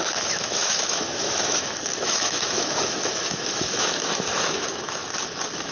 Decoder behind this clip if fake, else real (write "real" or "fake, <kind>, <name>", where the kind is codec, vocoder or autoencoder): fake, autoencoder, DAC-VAE